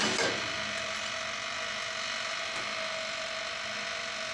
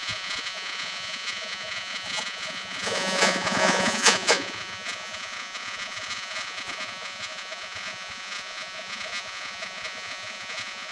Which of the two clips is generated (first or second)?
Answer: second